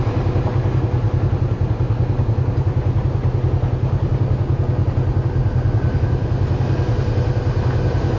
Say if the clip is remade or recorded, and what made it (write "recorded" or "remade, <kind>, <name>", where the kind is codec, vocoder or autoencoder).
recorded